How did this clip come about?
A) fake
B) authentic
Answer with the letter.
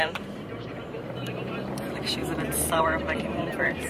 A